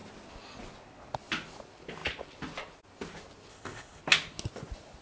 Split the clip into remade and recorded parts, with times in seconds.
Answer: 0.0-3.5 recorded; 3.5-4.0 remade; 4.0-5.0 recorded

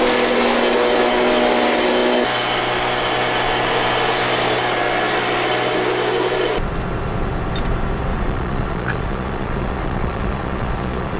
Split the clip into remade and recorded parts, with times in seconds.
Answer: 0.0-8.1 recorded; 8.1-11.2 remade

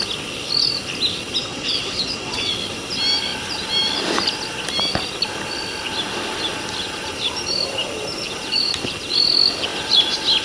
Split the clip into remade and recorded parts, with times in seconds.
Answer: 0.0-1.4 recorded; 1.4-2.5 remade; 2.5-10.4 recorded

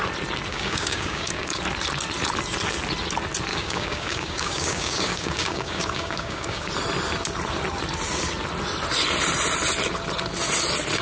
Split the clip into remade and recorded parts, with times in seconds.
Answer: 0.0-0.5 recorded; 0.5-1.6 remade; 1.6-3.5 recorded; 3.5-6.7 remade; 6.7-11.0 recorded